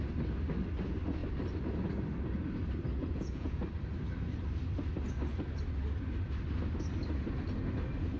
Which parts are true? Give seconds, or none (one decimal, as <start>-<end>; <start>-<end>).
0.0-3.0; 3.6-8.2